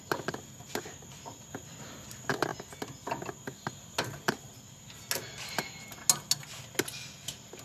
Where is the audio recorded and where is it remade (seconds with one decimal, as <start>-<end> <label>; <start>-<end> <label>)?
0.0-7.6 recorded